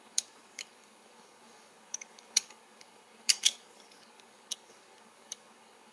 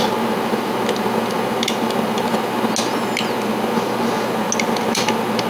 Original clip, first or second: second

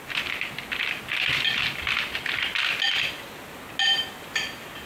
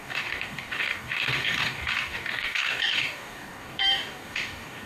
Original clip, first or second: first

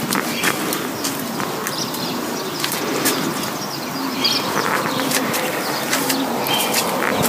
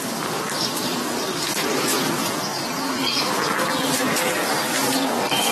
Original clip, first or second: first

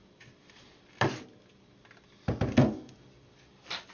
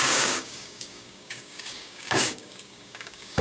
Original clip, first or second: first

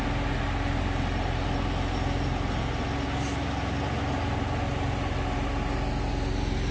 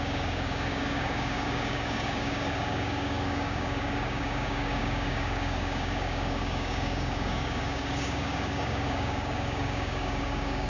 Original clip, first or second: first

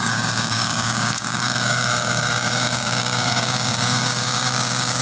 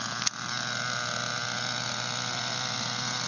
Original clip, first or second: second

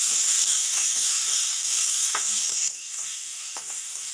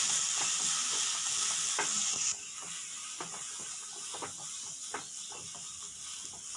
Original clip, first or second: second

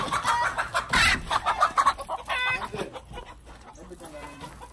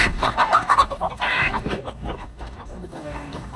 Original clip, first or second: first